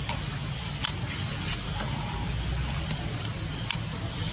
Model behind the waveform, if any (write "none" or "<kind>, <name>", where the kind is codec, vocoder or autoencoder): none